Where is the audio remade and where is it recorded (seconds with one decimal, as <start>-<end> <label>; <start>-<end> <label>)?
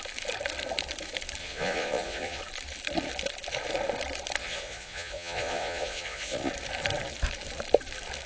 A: 0.0-1.4 recorded; 1.4-2.4 remade; 2.4-4.4 recorded; 4.4-6.5 remade; 6.5-8.3 recorded